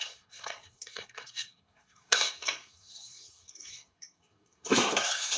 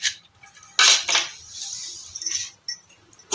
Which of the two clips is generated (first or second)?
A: first